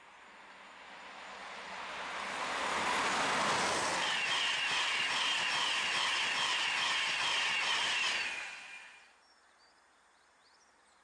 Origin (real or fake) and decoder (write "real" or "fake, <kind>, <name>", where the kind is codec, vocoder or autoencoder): real